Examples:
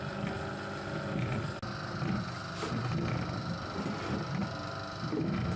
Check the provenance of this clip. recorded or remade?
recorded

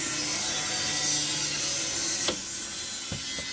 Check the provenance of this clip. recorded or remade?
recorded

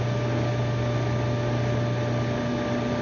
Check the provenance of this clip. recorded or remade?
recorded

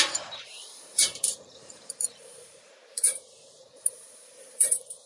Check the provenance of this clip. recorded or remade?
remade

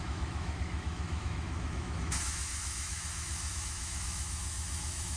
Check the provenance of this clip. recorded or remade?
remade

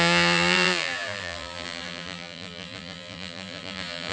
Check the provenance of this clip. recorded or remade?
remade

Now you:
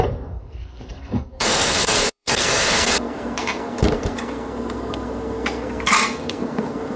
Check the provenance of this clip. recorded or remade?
remade